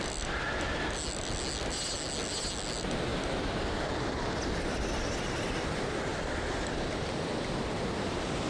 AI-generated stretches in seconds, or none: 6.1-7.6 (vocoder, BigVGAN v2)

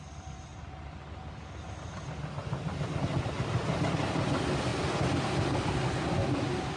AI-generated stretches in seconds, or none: none

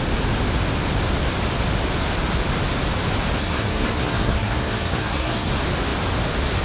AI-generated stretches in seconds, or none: 3.4-5.5 (codec, SNAC)